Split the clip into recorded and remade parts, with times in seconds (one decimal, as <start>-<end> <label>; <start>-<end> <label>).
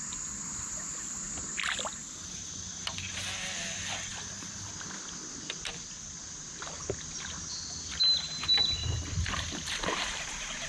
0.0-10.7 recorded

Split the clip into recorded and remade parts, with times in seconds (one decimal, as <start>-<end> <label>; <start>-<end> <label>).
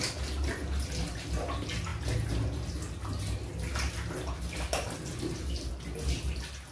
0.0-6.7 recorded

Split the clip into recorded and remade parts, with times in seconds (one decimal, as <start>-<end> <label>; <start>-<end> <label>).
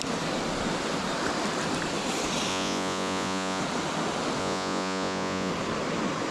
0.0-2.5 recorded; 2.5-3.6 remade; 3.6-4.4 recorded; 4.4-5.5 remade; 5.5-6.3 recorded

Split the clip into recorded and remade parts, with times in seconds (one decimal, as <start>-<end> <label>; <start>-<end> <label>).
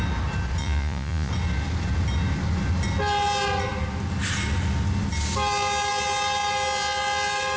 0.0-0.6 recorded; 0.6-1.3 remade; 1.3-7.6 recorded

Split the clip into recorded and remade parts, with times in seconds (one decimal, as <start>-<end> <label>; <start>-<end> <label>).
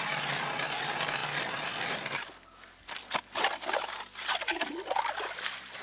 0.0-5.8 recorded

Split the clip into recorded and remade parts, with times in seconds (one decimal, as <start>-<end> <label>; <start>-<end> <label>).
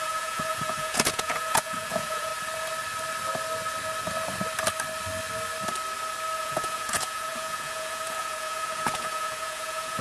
0.0-2.3 remade; 2.3-6.4 recorded; 6.4-10.0 remade